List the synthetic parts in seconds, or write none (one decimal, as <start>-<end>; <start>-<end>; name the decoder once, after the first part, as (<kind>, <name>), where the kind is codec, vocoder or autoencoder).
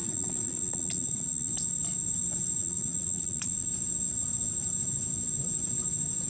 0.0-1.5 (vocoder, Vocos); 2.6-3.7